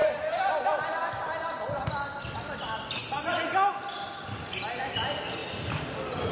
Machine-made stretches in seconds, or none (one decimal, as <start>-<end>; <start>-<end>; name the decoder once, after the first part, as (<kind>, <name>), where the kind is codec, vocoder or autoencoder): 0.0-0.6 (vocoder, BigVGAN v2)